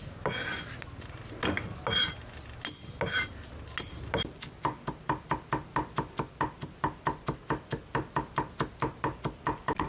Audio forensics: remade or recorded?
recorded